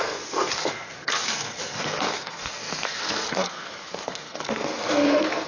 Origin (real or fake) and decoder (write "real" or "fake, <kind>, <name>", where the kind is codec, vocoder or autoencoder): fake, codec, SNAC